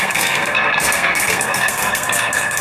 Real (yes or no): no